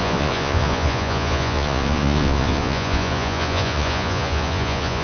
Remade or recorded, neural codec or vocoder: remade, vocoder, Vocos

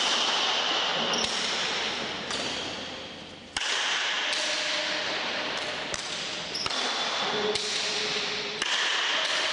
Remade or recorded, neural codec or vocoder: recorded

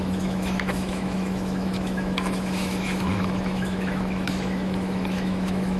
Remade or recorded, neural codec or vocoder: remade, autoencoder, DAC-VAE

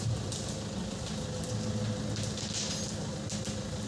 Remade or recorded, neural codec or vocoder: recorded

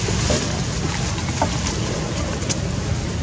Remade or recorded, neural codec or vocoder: recorded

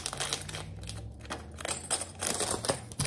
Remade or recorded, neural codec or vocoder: recorded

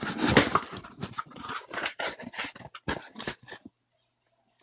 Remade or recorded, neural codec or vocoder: remade, vocoder, BigVGAN v2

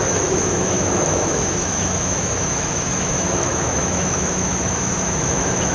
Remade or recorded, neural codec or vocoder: remade, autoencoder, DAC-VAE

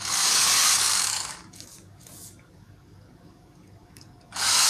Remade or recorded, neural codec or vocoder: remade, codec, DAC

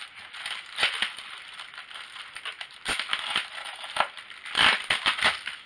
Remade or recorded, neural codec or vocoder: recorded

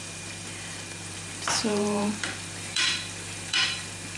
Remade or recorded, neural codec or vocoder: remade, vocoder, BigVGAN v2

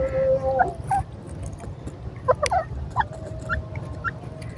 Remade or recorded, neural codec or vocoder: recorded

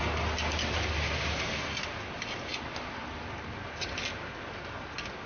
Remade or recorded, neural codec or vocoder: recorded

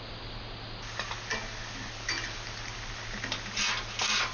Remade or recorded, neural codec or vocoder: recorded